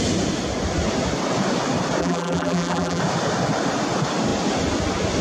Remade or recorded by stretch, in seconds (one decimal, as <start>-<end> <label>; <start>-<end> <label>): 0.0-2.0 recorded; 2.0-3.0 remade; 3.0-5.2 recorded